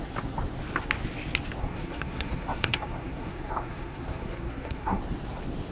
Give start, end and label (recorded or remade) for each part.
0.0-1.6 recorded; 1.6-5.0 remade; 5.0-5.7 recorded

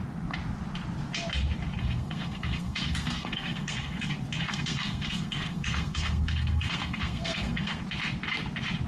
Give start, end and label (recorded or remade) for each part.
0.0-1.8 recorded; 1.8-4.1 remade; 4.1-4.5 recorded; 4.5-7.8 remade; 7.8-8.9 recorded

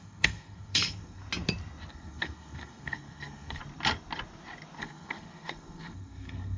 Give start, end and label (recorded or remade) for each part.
0.0-1.2 remade; 1.2-1.9 recorded; 1.9-3.6 remade; 3.6-4.8 recorded; 4.8-6.6 remade

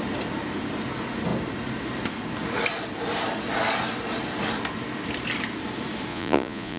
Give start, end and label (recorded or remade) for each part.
0.0-6.1 recorded; 6.1-6.8 remade

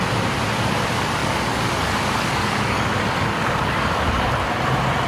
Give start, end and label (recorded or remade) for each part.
0.0-1.2 recorded; 1.2-4.3 remade; 4.3-5.1 recorded

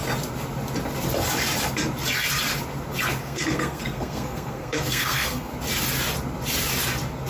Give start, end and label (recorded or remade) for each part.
0.0-3.2 recorded; 3.2-5.5 remade; 5.5-7.3 recorded

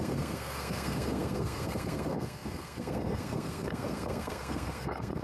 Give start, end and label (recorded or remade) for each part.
0.0-5.2 remade

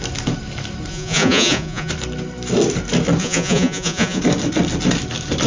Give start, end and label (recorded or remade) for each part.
0.0-0.9 recorded; 0.9-1.9 remade; 1.9-3.2 recorded; 3.2-4.2 remade; 4.2-5.5 recorded